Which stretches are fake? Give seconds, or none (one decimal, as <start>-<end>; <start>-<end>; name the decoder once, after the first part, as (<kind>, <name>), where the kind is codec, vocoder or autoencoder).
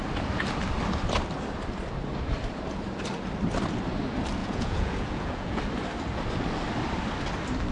4.4-5.6 (vocoder, Vocos)